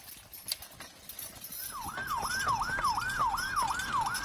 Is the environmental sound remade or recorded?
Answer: recorded